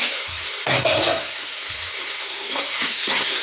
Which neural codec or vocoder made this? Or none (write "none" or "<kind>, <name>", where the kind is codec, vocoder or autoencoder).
codec, SNAC